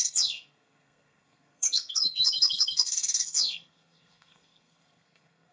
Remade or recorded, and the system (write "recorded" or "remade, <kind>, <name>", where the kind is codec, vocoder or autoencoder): remade, codec, SNAC